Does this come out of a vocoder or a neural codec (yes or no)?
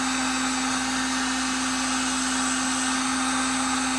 no